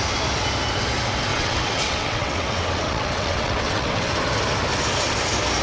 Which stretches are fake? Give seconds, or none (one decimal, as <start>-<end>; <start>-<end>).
1.3-4.1